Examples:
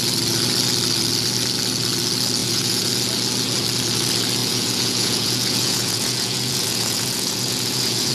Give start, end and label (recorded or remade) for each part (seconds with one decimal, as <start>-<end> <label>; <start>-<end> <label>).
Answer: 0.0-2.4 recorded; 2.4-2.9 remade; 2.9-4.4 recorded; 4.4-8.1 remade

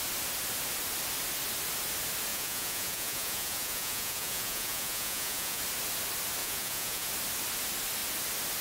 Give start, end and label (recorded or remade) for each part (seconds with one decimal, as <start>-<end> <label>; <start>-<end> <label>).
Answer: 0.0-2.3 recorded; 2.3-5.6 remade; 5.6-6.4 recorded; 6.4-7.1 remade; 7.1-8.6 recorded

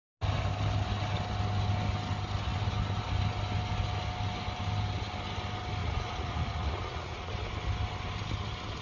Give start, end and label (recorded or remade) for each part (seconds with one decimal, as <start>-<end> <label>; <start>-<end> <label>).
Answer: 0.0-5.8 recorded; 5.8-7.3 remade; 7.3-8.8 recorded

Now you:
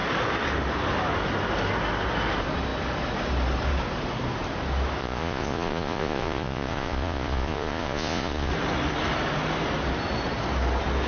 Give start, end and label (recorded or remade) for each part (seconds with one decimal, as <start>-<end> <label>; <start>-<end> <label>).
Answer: 0.0-5.0 recorded; 5.0-8.5 remade; 8.5-11.1 recorded

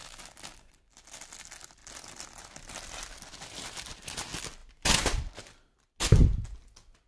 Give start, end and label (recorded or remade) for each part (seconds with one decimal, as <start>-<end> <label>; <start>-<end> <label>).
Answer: 0.0-7.1 recorded